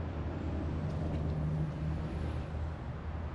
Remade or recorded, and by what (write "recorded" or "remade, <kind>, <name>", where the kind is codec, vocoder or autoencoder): recorded